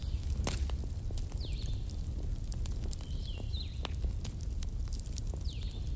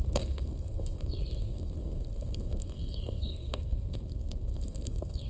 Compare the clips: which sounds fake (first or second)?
second